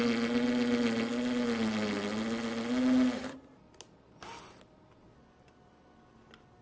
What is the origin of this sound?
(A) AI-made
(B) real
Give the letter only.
B